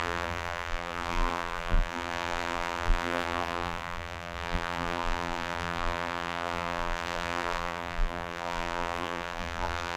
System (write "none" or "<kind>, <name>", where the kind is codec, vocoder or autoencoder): vocoder, BigVGAN v2